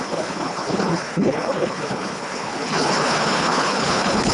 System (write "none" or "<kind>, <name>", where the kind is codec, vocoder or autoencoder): codec, HILCodec